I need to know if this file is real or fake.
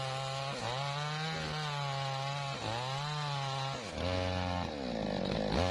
real